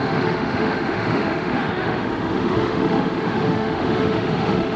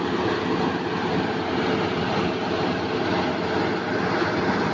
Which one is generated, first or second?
first